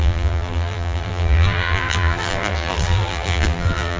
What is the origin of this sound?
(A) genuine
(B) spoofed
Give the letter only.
B